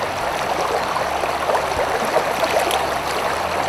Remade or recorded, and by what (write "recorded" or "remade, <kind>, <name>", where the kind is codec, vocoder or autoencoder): recorded